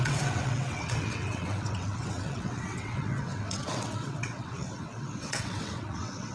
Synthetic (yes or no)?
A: yes